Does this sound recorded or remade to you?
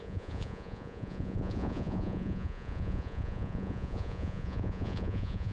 remade